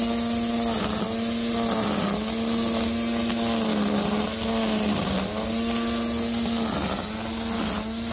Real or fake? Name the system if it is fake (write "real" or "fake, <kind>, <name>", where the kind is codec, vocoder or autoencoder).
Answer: real